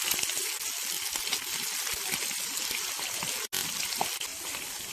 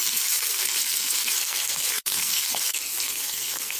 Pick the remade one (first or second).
second